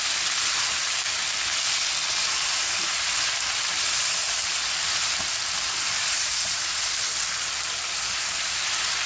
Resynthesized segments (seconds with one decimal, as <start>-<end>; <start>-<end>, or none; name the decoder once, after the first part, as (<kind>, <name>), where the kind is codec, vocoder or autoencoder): 6.0-6.8 (vocoder, Vocos)